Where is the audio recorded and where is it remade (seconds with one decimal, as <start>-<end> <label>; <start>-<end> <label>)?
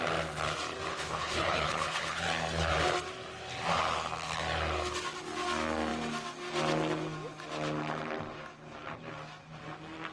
0.0-0.9 recorded; 0.9-2.2 remade; 2.2-10.1 recorded